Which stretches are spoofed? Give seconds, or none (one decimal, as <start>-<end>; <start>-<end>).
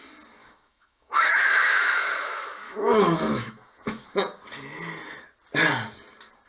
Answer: 0.4-4.1